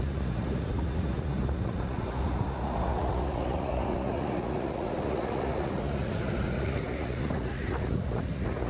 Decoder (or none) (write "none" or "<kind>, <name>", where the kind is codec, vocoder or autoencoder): vocoder, Vocos